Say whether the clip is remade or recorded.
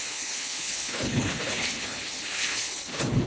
remade